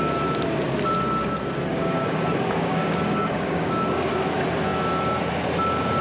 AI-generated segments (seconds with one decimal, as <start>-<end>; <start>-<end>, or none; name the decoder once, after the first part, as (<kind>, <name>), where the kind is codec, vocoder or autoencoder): 1.7-4.1 (codec, DAC)